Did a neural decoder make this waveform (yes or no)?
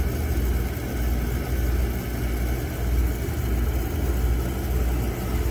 no